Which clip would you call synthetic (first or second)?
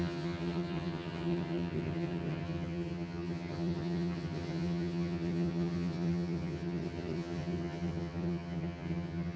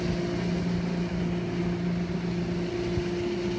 first